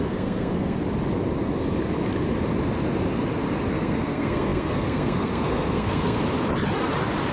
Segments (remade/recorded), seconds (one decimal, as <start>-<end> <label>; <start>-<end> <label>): 0.0-0.8 remade; 0.8-3.7 recorded; 3.7-6.2 remade; 6.2-7.3 recorded